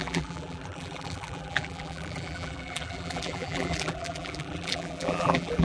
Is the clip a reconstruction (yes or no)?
yes